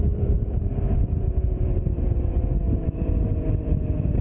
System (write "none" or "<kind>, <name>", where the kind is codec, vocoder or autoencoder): vocoder, BigVGAN v2